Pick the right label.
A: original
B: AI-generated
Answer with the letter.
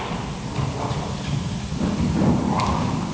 A